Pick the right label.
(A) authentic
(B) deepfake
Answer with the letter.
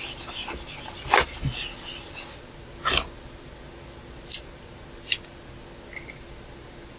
A